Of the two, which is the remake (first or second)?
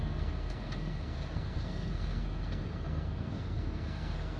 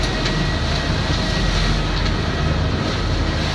first